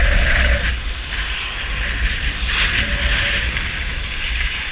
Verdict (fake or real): real